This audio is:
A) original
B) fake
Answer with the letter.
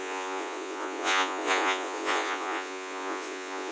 B